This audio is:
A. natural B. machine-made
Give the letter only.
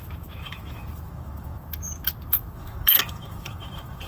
B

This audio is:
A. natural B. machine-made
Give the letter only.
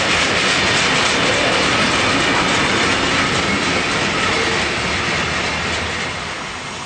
A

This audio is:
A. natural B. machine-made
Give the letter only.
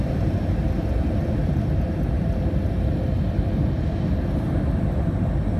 A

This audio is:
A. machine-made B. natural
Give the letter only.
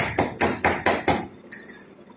B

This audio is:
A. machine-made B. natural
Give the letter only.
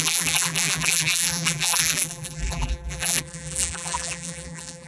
A